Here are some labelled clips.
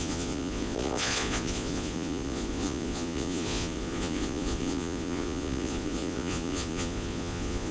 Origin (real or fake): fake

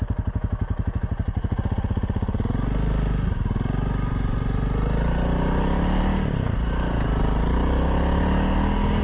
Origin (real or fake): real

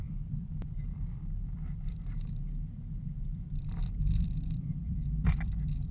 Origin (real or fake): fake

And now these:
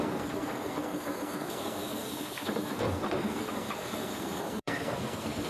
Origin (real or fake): fake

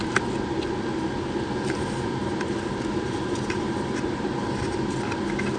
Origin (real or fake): real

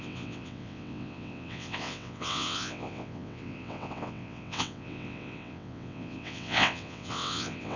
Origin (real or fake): fake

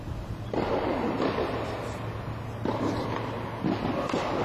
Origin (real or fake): real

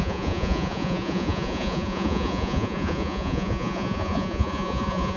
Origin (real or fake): fake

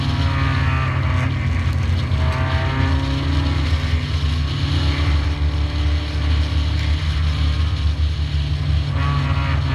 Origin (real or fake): real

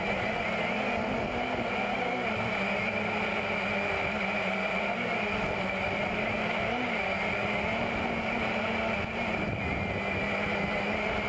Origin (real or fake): real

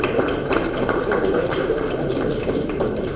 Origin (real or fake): fake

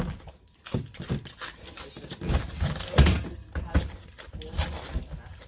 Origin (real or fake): real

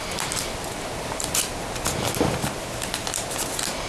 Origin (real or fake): real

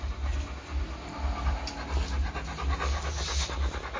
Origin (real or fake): real